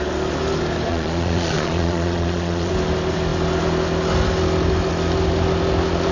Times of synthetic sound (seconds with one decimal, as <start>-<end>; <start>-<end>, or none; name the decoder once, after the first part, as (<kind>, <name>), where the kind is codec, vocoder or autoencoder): 0.9-2.7 (vocoder, Vocos)